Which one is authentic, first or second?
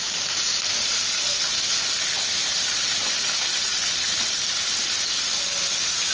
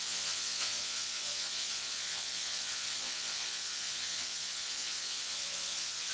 first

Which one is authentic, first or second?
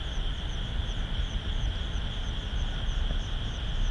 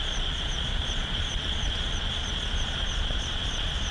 first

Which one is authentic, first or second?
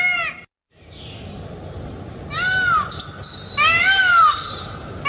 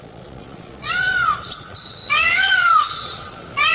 first